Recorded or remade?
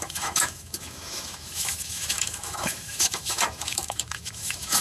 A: remade